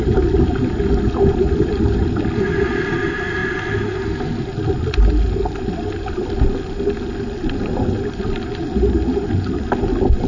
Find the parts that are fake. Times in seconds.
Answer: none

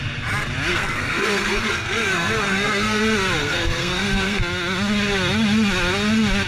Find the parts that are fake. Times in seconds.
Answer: 0.7-3.0 (codec, SNAC); 3.4-4.4

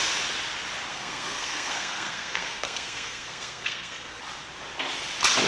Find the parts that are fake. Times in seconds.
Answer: 0.9-4.2 (codec, SNAC)